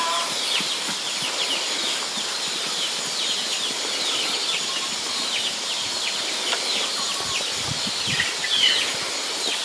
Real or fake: real